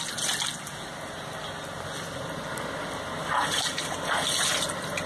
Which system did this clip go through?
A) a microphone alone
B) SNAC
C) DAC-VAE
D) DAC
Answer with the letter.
A